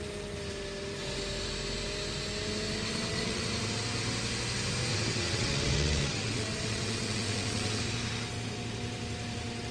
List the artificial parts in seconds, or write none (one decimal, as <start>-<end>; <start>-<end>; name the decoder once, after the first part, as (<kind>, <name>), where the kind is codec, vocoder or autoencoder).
2.9-3.5 (vocoder, WaveNeXt); 4.9-7.8